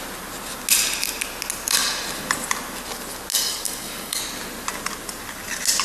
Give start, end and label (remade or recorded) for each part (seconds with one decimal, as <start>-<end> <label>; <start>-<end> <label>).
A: 0.0-3.3 recorded; 3.3-4.2 remade; 4.2-5.8 recorded